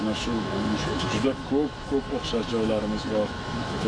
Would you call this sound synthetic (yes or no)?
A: yes